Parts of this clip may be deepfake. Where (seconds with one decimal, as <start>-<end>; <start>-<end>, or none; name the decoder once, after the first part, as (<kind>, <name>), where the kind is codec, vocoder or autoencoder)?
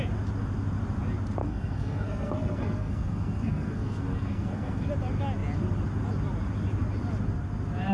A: 1.4-4.9 (codec, SNAC)